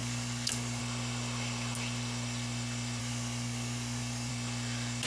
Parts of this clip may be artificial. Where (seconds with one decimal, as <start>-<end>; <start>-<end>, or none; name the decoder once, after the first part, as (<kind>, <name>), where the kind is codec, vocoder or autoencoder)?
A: 0.0-0.8 (codec, DAC); 3.0-4.3